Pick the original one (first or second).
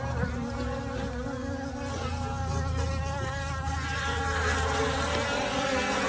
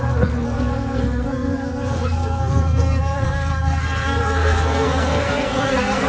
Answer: first